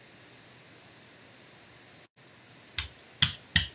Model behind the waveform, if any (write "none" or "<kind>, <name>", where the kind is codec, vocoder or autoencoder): none